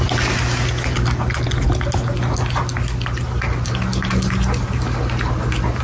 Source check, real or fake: real